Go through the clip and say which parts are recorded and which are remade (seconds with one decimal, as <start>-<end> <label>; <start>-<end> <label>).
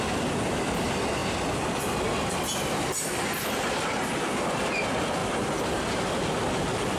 0.0-7.0 recorded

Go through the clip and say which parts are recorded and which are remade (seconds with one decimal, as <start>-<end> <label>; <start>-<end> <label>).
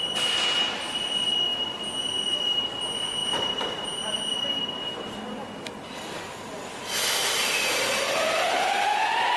0.0-9.4 recorded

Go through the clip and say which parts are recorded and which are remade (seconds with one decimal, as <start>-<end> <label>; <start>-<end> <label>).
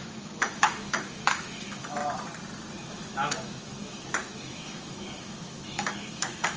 0.0-2.0 remade; 2.0-2.9 recorded; 2.9-6.6 remade